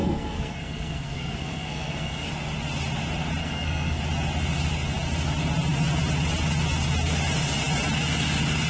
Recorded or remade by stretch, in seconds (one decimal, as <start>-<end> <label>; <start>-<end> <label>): 0.0-2.3 remade; 2.3-3.4 recorded; 3.4-4.0 remade; 4.0-8.7 recorded